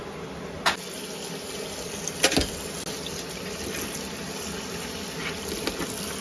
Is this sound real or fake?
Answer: real